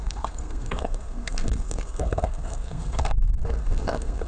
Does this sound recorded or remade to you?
remade